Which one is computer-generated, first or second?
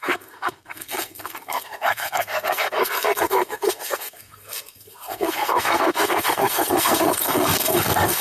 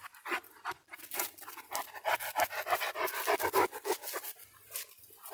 first